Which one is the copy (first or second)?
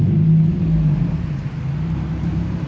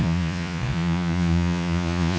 second